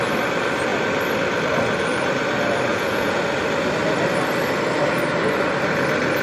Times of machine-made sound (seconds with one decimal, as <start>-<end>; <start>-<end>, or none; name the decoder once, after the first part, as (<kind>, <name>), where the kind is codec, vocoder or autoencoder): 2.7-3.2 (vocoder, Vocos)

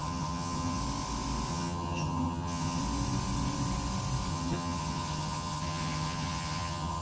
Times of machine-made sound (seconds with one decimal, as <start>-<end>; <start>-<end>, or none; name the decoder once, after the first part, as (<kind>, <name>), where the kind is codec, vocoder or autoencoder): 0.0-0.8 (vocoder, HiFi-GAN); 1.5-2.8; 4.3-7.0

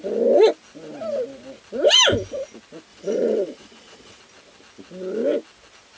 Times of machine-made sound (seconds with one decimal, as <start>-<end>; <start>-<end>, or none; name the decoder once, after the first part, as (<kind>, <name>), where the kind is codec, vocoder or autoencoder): 2.9-4.2 (vocoder, Vocos)

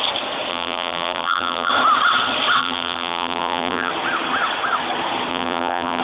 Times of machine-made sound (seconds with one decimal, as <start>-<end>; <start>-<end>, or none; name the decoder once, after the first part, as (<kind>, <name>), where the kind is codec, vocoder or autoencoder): 0.5-1.7 (vocoder, BigVGAN v2); 2.6-3.9; 5.3-6.0